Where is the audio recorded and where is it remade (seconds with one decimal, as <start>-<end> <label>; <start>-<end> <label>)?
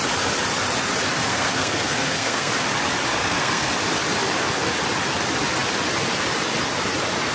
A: 0.0-1.3 recorded; 1.3-2.5 remade; 2.5-3.2 recorded; 3.2-3.7 remade; 3.7-7.3 recorded